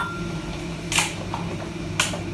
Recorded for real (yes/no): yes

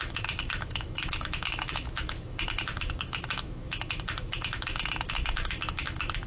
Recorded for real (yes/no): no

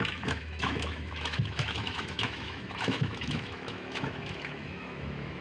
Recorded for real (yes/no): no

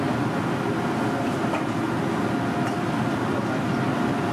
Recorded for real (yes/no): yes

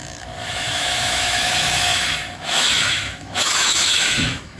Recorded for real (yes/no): no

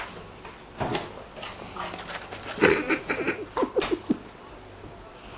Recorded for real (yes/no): yes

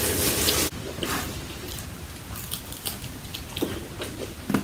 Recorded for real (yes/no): yes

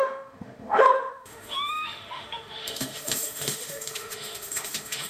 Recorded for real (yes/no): no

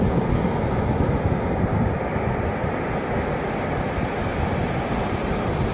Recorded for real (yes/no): yes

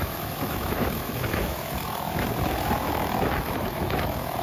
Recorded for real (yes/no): no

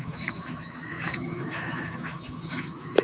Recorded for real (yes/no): no